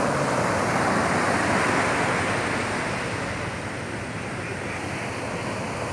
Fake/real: real